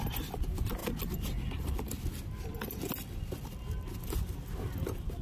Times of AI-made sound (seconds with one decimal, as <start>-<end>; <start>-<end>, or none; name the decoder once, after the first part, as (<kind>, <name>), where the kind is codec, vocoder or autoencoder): none